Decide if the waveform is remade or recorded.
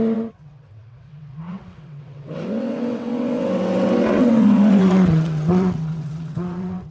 remade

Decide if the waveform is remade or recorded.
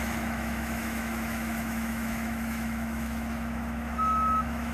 remade